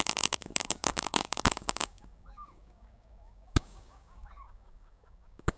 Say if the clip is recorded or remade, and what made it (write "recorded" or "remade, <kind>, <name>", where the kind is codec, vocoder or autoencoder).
remade, codec, DAC